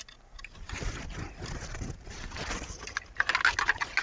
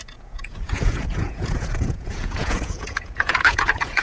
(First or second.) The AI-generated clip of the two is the second